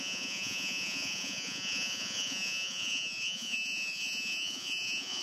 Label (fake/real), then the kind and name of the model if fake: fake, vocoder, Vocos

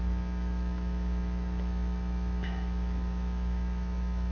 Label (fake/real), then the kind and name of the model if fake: fake, autoencoder, DAC-VAE